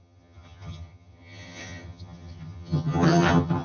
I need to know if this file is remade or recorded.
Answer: remade